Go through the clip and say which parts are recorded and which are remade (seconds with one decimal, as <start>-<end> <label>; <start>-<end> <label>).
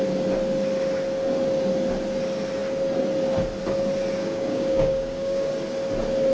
0.0-4.2 recorded; 4.2-5.5 remade; 5.5-6.3 recorded